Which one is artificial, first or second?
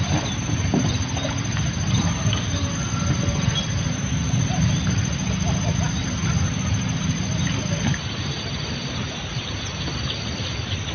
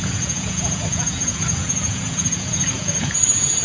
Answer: second